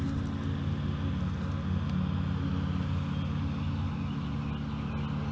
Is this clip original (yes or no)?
yes